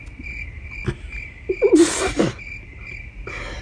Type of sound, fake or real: real